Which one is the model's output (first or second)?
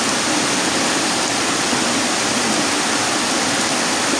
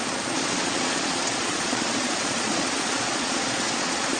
second